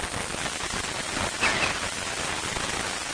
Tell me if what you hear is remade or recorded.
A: recorded